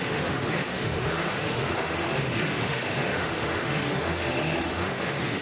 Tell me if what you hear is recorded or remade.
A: remade